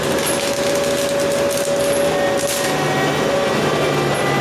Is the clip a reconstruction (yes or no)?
no